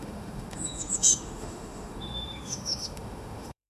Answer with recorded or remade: remade